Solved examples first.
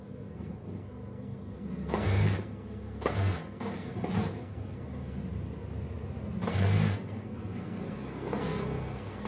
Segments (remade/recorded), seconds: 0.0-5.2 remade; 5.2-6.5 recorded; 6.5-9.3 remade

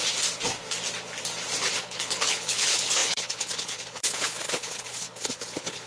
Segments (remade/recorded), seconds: 0.0-1.8 recorded; 1.8-5.9 remade

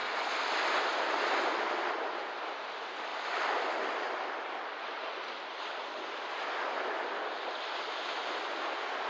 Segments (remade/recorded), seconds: 0.0-1.9 remade; 1.9-3.1 recorded; 3.1-7.8 remade; 7.8-9.1 recorded

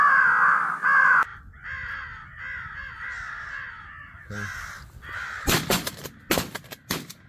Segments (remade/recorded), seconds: 0.0-7.3 recorded

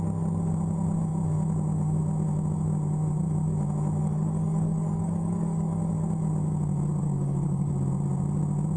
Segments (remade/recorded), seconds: 0.0-4.0 recorded; 4.0-5.9 remade; 5.9-7.0 recorded; 7.0-7.7 remade; 7.7-8.8 recorded

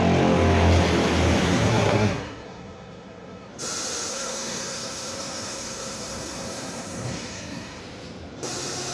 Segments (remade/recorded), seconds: 0.0-1.4 recorded; 1.4-3.5 remade; 3.5-4.1 recorded; 4.1-7.8 remade; 7.8-8.9 recorded